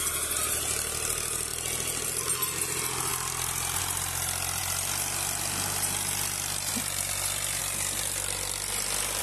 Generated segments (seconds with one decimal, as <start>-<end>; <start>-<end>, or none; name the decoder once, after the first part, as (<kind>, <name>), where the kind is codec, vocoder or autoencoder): 7.6-9.2 (vocoder, BigVGAN v2)